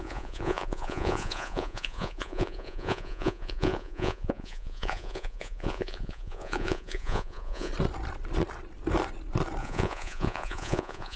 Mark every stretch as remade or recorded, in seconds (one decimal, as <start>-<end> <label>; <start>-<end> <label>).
0.0-7.7 remade; 7.7-9.6 recorded; 9.6-11.2 remade